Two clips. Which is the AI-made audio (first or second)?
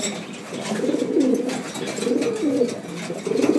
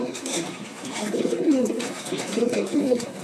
second